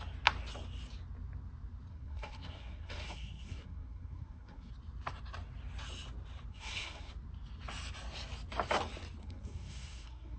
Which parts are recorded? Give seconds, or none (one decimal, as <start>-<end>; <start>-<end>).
0.0-1.9; 4.7-6.5; 7.1-9.2